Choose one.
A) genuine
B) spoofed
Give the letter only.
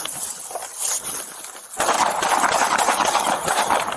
A